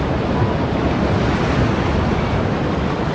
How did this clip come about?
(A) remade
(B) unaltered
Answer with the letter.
B